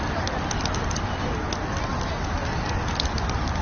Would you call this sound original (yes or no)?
yes